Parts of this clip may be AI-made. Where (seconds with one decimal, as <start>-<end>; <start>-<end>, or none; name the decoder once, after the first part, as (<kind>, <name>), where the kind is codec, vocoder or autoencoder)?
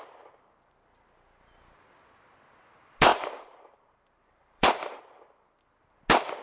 3.1-5.0 (vocoder, BigVGAN v2)